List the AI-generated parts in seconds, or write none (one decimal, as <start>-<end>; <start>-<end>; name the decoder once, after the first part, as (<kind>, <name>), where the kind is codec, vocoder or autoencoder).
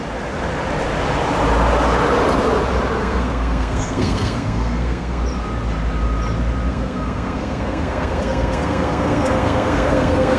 3.0-5.2 (codec, SNAC); 6.7-10.4